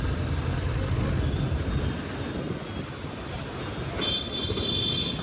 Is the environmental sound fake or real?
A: real